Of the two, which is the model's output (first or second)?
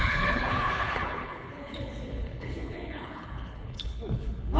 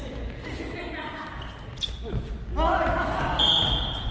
first